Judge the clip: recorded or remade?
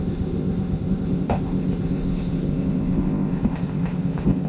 remade